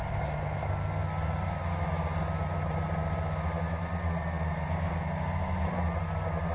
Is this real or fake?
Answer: real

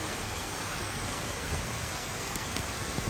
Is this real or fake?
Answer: fake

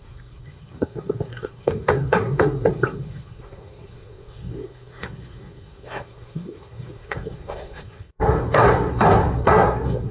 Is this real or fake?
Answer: fake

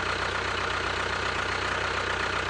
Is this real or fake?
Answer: real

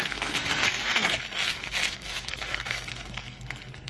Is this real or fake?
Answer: fake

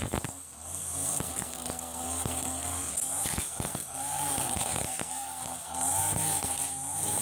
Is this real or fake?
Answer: fake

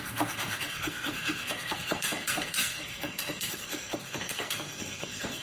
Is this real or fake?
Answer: fake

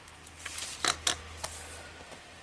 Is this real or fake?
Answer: real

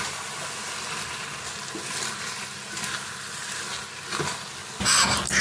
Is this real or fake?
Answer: real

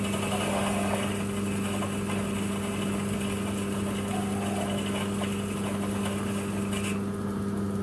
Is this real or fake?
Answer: real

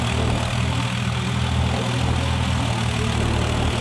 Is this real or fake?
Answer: real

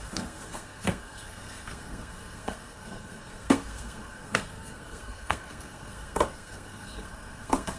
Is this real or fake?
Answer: fake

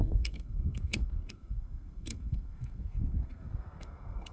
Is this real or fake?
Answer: fake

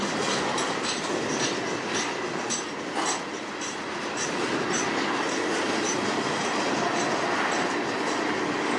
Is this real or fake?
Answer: real